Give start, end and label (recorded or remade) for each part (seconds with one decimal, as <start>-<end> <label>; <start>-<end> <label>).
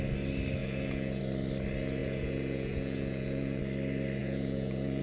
0.0-0.6 recorded; 0.6-1.2 remade; 1.2-2.0 recorded; 2.0-3.6 remade; 3.6-4.2 recorded; 4.2-5.0 remade